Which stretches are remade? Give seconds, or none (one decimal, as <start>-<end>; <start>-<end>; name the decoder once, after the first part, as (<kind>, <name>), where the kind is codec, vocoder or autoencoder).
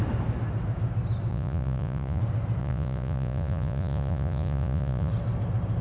1.3-2.2 (vocoder, Vocos); 2.6-5.1